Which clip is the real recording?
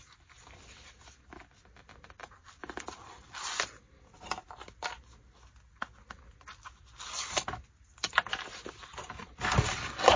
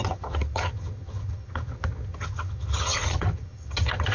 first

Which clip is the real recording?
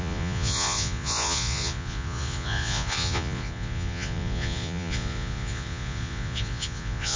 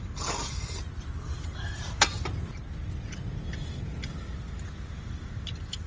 second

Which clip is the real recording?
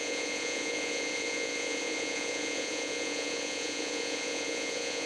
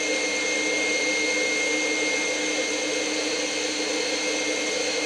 second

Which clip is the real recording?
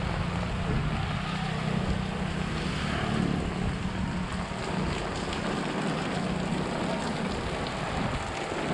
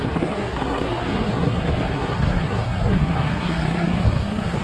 first